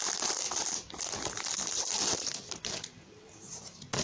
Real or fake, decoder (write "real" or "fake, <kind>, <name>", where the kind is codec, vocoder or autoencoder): real